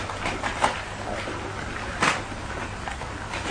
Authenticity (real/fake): real